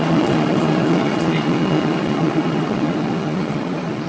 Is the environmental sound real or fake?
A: fake